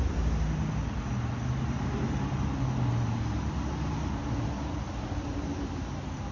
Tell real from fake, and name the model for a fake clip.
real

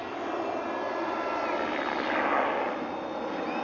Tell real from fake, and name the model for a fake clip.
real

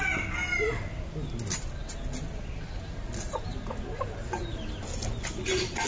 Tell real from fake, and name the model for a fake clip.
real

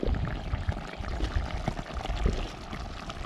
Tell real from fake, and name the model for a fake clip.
real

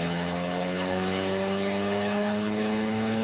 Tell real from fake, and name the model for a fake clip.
fake, codec, HILCodec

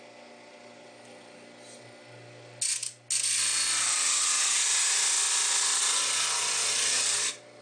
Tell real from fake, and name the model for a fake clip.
real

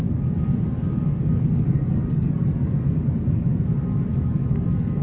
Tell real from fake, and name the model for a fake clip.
fake, codec, DAC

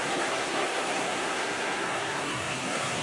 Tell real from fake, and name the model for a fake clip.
fake, codec, SNAC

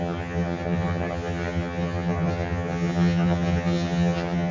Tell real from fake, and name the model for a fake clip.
fake, vocoder, HiFi-GAN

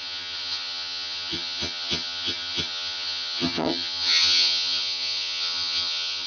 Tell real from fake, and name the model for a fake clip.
fake, vocoder, HiFi-GAN